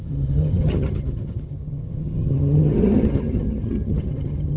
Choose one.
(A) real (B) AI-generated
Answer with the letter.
B